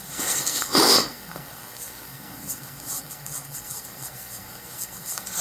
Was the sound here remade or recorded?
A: remade